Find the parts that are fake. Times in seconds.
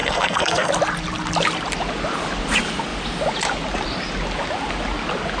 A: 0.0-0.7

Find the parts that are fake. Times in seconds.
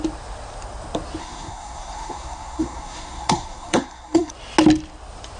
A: 1.2-4.3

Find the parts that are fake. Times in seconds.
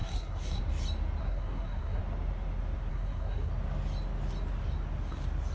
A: 0.0-0.6; 1.2-2.0; 2.9-3.5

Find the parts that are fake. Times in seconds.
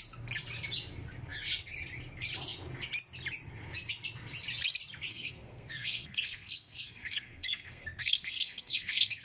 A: 5.1-9.2